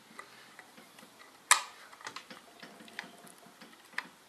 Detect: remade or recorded recorded